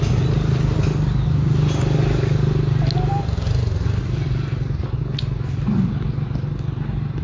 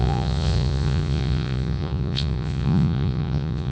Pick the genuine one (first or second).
first